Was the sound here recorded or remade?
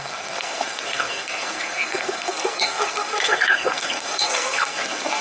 remade